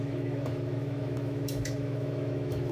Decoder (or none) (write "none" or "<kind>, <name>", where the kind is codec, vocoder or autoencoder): autoencoder, DAC-VAE